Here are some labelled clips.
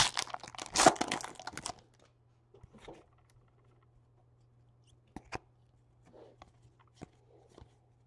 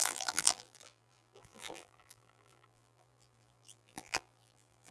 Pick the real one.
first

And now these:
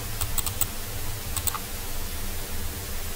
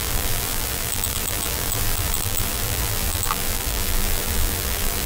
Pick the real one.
first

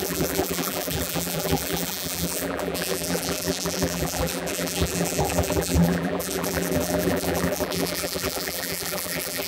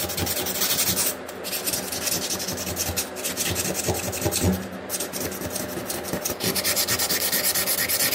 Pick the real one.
second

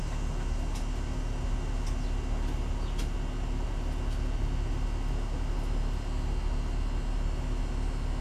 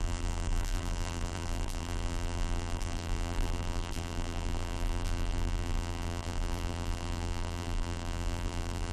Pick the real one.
first